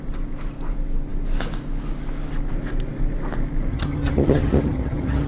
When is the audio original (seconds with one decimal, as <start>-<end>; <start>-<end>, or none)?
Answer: 0.0-3.7